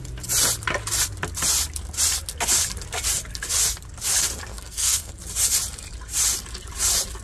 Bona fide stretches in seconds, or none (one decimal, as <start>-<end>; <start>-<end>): 0.0-4.5; 5.1-7.2